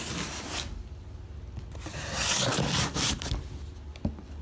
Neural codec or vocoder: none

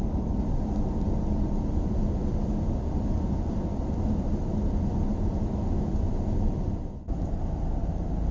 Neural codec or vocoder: none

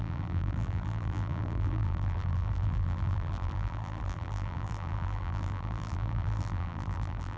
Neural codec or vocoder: vocoder, BigVGAN v2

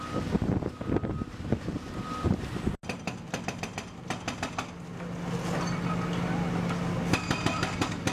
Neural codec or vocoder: none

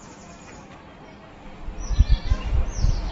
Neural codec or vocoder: none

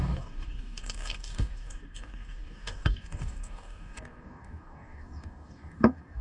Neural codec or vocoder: codec, DAC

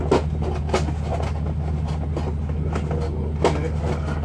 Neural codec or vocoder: none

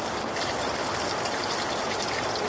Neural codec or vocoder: none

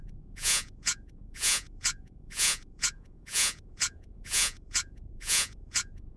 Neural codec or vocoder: vocoder, Vocos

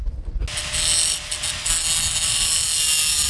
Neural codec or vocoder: none